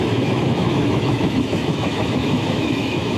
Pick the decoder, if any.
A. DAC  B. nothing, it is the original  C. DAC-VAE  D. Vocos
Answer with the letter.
C